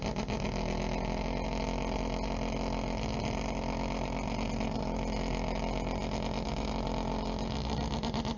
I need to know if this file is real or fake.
real